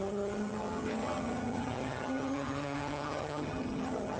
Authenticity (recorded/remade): remade